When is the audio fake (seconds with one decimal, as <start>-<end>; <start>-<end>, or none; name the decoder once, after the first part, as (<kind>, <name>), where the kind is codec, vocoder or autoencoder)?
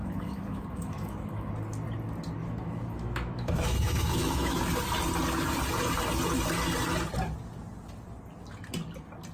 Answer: 0.0-1.5 (autoencoder, DAC-VAE); 2.4-4.6